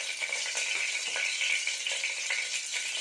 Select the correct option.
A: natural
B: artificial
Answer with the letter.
A